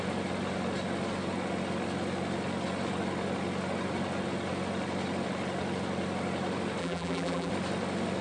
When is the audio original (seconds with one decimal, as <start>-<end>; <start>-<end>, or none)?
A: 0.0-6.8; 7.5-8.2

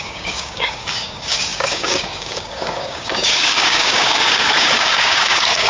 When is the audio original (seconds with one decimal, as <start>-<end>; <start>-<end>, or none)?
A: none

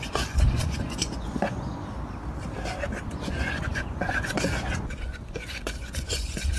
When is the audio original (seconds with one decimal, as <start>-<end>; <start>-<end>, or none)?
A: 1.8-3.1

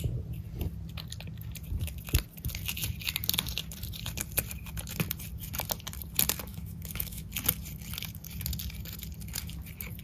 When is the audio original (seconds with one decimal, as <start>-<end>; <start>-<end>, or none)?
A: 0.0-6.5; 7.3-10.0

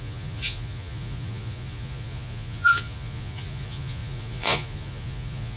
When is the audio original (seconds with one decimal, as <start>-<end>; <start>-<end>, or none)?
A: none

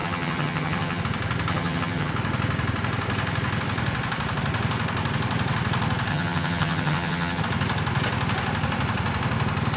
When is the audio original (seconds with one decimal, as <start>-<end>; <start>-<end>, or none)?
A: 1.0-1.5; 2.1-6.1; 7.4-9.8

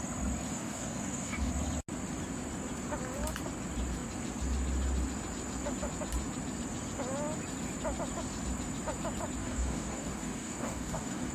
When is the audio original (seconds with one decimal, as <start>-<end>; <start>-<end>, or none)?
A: 0.0-0.5; 1.5-9.4

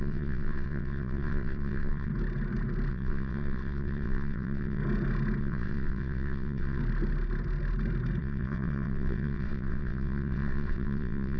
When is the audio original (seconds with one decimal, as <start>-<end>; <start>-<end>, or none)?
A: 2.1-2.9; 4.8-5.4; 6.8-8.2